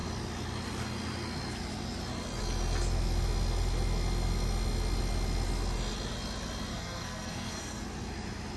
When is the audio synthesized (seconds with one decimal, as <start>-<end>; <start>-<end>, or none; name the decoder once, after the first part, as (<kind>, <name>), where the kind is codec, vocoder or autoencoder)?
6.7-7.8 (codec, SNAC)